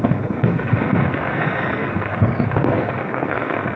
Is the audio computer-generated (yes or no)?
yes